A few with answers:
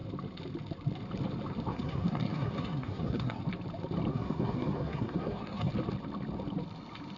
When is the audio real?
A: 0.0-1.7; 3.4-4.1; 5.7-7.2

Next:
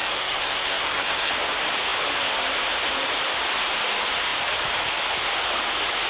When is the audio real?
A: 1.3-6.1